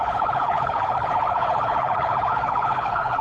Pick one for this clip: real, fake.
fake